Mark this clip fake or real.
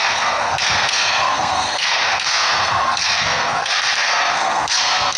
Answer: fake